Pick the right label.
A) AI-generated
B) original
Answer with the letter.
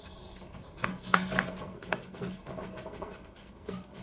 A